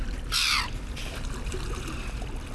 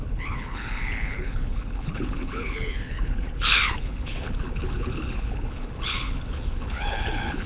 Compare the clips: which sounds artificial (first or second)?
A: second